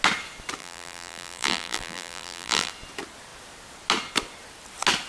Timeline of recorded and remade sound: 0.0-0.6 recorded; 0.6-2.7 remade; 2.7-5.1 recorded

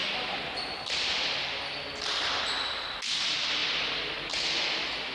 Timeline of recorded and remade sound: 0.0-5.1 recorded